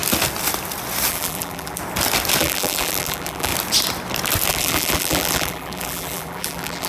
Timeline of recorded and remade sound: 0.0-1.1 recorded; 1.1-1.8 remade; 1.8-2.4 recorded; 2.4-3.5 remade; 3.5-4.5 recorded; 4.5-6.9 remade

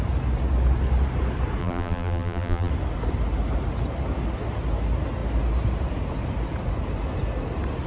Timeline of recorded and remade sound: 0.0-1.6 recorded; 1.6-2.7 remade; 2.7-7.9 recorded

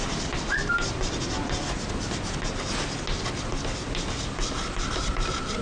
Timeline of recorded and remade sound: 0.0-1.9 remade; 1.9-5.6 recorded

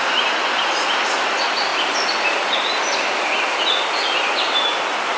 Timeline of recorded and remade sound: 0.0-1.7 recorded; 1.7-4.8 remade; 4.8-5.2 recorded

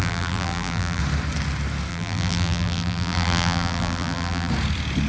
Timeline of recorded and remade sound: 0.0-1.0 remade; 1.0-1.9 recorded; 1.9-4.5 remade; 4.5-5.1 recorded